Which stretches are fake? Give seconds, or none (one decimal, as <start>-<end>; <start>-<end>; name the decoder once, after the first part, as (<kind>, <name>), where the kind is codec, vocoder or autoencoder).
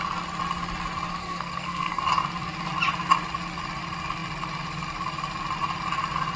1.2-2.0 (codec, SNAC)